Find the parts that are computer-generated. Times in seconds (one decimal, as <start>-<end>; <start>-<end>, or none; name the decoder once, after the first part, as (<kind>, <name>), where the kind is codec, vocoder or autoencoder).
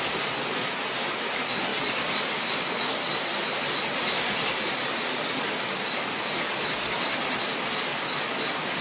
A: 1.7-4.9 (vocoder, BigVGAN v2)